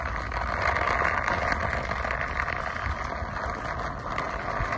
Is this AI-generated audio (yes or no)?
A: no